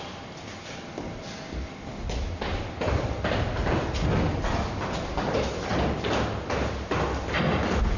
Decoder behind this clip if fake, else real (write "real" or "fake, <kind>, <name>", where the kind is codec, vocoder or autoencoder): real